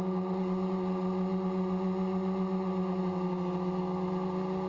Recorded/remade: recorded